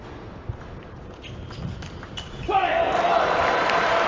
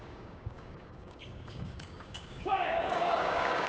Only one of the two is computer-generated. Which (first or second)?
second